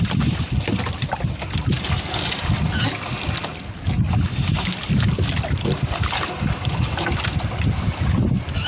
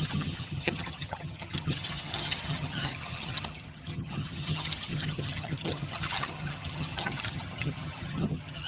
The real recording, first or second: first